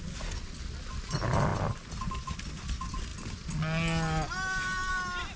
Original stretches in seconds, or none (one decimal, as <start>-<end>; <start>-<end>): 0.0-5.4